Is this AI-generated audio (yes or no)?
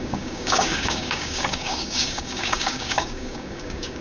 yes